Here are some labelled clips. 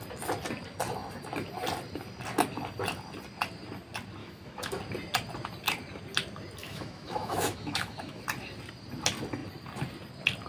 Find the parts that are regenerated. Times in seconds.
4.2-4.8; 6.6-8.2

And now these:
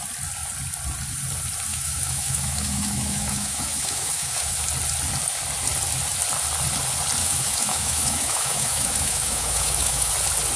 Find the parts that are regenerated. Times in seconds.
1.7-4.6; 7.2-10.1

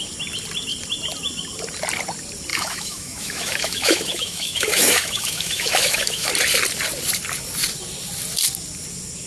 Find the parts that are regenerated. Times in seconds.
2.5-6.3

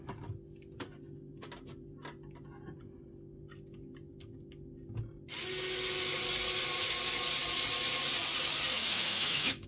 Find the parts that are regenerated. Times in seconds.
8.7-9.7

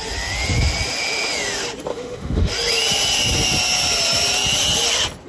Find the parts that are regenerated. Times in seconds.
1.9-2.5

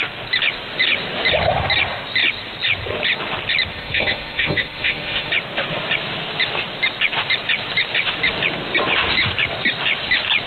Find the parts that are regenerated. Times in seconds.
3.7-5.3

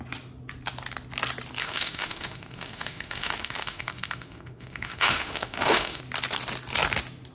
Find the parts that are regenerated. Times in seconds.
1.6-6.0

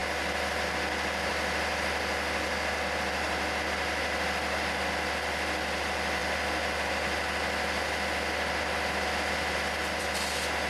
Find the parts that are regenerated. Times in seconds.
none